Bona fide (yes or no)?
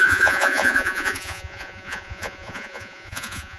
no